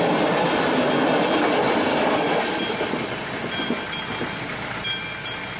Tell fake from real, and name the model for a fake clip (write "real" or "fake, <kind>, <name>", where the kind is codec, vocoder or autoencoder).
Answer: real